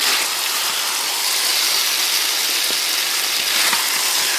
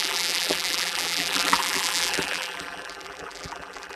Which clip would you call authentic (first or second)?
first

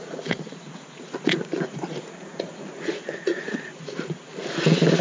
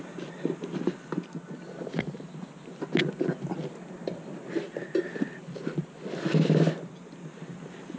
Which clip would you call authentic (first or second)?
second